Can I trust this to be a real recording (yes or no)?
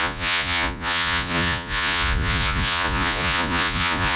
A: no